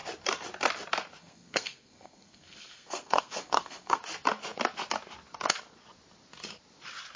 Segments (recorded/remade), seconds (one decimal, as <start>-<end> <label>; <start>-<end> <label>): 0.0-1.2 recorded; 1.2-4.0 remade; 4.0-7.2 recorded